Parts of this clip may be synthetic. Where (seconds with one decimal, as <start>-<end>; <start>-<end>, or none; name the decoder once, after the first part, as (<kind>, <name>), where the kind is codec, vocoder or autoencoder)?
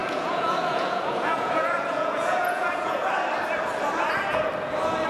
0.0-3.1 (vocoder, Vocos)